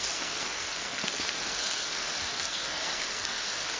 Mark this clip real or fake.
fake